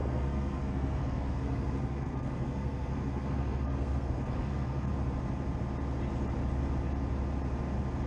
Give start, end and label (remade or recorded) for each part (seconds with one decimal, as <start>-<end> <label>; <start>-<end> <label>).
0.0-4.9 remade; 4.9-8.1 recorded